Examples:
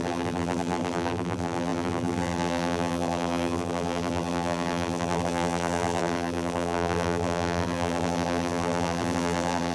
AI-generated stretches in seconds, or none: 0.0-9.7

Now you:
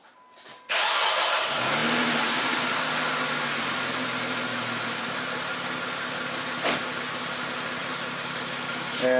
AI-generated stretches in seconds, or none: 7.8-8.4

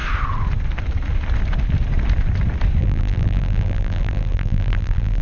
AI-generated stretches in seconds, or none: 2.8-5.2